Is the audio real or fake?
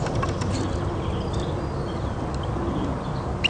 real